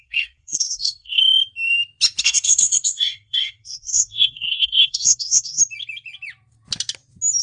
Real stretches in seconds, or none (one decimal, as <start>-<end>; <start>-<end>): 1.2-2.2; 5.6-7.4